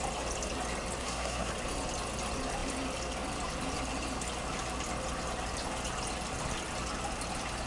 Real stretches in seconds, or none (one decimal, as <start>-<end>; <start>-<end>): 0.0-1.0; 1.5-7.7